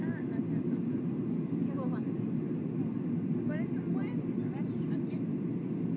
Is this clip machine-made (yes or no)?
no